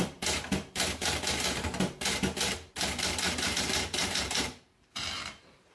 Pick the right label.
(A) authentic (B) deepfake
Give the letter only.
B